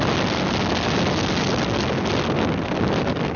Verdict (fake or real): real